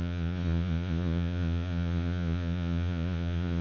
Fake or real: fake